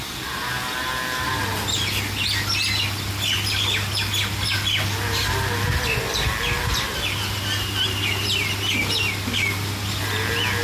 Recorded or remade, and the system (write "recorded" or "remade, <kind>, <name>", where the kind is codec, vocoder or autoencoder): recorded